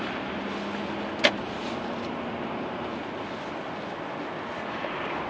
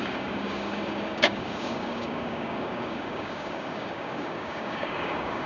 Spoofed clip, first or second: second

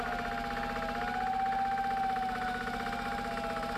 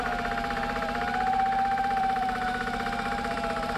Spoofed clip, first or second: second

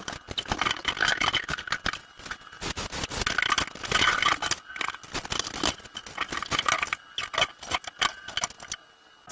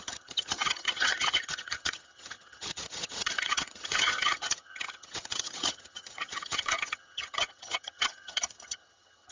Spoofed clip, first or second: second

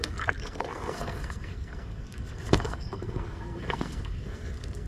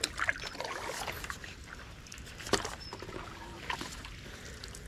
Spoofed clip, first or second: first